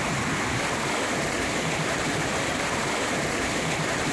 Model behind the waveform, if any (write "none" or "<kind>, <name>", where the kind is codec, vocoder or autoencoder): none